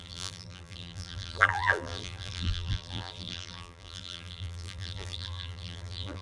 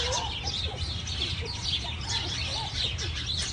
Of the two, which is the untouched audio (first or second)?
second